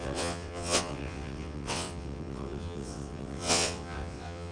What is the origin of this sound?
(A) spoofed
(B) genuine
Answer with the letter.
A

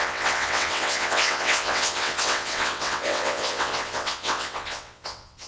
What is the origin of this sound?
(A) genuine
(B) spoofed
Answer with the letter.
B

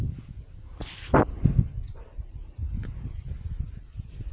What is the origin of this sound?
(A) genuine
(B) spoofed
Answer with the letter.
A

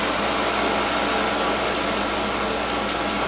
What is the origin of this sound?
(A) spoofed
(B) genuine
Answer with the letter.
B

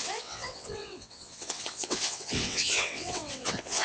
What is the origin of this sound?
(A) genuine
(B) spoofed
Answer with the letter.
B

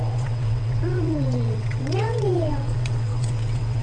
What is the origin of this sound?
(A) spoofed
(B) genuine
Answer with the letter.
A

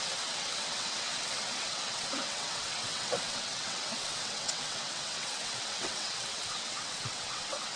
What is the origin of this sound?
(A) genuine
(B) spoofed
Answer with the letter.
B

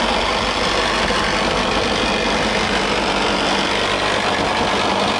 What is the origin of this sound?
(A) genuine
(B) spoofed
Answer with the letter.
A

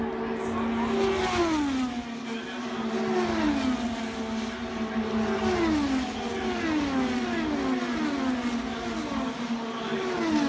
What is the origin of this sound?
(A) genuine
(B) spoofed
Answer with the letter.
A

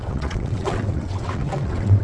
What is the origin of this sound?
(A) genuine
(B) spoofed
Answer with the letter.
B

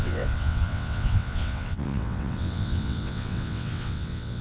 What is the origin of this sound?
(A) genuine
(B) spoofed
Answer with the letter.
B